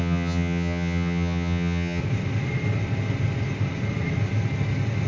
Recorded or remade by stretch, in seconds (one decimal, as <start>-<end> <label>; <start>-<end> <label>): 0.0-2.0 remade; 2.0-5.1 recorded